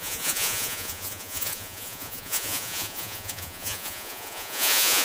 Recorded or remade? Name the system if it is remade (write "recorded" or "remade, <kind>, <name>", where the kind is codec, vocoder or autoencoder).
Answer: remade, vocoder, Vocos